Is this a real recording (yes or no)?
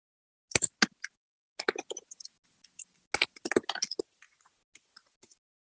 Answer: yes